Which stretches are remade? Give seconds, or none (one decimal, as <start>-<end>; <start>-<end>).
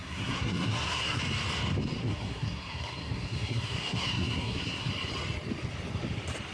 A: 0.0-1.2; 2.0-4.9